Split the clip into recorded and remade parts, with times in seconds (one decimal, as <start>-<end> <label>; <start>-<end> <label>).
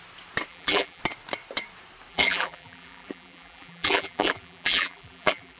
0.0-0.5 recorded; 0.5-1.0 remade; 1.0-2.1 recorded; 2.1-5.6 remade